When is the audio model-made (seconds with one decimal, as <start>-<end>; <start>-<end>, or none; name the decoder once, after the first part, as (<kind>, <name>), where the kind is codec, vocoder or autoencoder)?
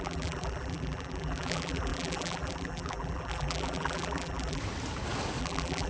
0.0-4.6 (vocoder, BigVGAN v2); 5.4-5.9